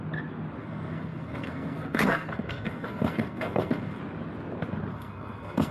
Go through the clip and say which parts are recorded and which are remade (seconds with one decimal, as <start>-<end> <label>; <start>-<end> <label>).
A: 0.0-0.6 recorded; 0.6-4.0 remade; 4.0-4.9 recorded; 4.9-5.7 remade

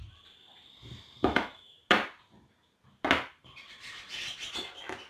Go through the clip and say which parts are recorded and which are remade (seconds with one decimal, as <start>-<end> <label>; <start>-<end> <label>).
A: 0.0-1.2 recorded; 1.2-1.8 remade; 1.8-5.1 recorded

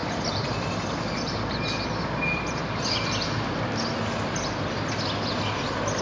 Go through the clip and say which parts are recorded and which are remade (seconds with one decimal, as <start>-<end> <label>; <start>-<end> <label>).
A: 0.0-6.0 recorded

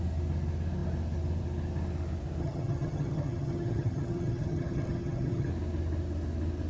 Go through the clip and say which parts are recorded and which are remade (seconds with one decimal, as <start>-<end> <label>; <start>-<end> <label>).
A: 0.0-2.4 recorded; 2.4-5.5 remade; 5.5-6.7 recorded

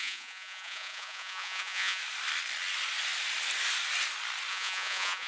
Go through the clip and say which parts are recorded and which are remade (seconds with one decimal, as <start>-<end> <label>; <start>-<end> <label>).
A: 0.0-2.0 remade; 2.0-4.5 recorded; 4.5-5.3 remade

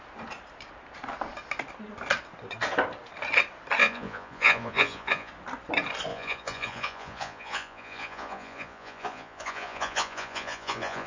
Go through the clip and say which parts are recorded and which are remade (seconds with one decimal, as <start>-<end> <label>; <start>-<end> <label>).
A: 0.0-3.8 recorded; 3.8-5.3 remade; 5.3-6.1 recorded; 6.1-11.1 remade

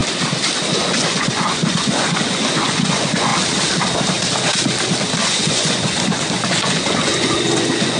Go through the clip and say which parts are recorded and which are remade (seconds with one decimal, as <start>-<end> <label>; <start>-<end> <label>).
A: 0.0-0.7 recorded; 0.7-3.3 remade; 3.3-5.2 recorded; 5.2-8.0 remade

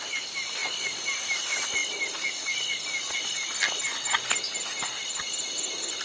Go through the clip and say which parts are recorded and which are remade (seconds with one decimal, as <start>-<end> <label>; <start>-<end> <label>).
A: 0.0-6.0 recorded